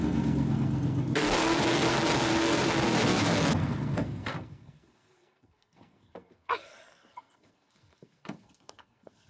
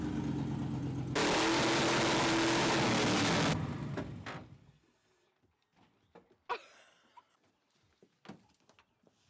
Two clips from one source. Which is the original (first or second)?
second